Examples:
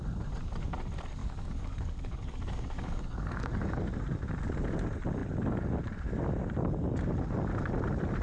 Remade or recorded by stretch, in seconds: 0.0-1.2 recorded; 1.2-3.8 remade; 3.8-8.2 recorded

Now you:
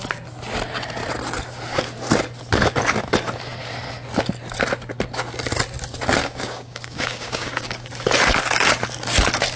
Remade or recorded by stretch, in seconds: 0.0-6.2 recorded; 6.2-7.9 remade; 7.9-9.6 recorded